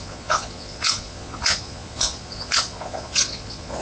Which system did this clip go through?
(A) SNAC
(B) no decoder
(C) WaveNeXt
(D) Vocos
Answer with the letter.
D